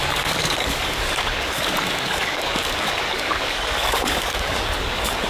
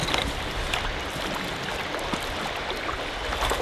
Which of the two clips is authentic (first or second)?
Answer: second